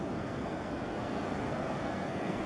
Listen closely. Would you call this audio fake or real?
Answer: fake